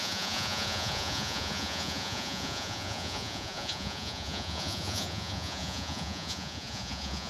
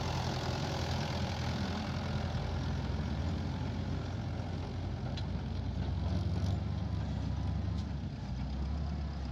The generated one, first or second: first